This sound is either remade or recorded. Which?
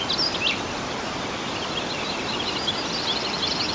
recorded